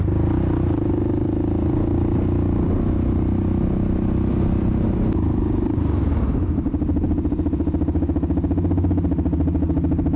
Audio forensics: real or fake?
real